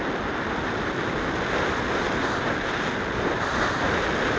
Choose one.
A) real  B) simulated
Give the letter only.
A